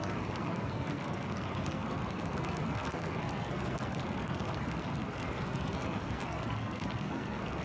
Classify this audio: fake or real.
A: fake